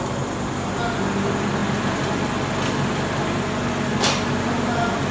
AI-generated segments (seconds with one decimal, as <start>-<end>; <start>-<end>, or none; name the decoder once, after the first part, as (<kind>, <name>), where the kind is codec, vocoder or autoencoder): none